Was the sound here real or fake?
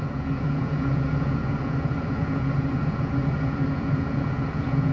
fake